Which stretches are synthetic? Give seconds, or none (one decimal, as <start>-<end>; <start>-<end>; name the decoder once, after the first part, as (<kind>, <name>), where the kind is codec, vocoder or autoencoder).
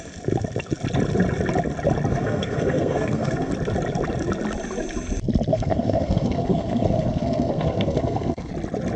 2.1-3.5 (codec, SNAC); 5.5-8.5